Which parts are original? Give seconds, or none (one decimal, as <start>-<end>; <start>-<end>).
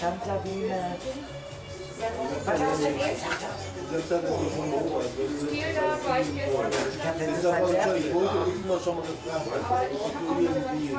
0.0-2.7; 3.4-8.4; 10.1-11.0